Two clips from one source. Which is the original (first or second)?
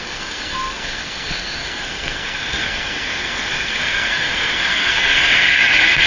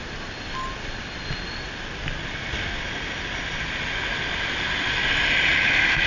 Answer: second